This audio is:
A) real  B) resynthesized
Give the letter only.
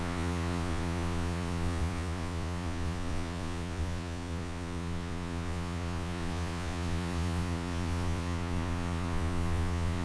B